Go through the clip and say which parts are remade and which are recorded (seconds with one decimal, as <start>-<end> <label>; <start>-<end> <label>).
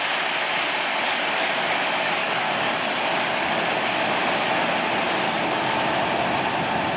0.0-0.9 recorded; 0.9-1.5 remade; 1.5-2.2 recorded; 2.2-3.6 remade; 3.6-7.0 recorded